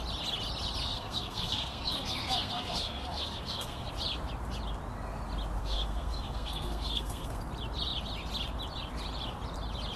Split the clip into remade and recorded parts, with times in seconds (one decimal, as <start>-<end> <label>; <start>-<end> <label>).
0.0-0.8 recorded; 0.8-3.9 remade; 3.9-5.6 recorded; 5.6-7.4 remade; 7.4-10.0 recorded